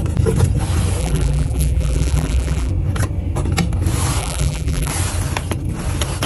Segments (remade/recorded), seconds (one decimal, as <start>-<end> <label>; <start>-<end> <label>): 0.0-1.0 recorded; 1.0-2.7 remade; 2.7-4.2 recorded; 4.2-4.9 remade; 4.9-6.3 recorded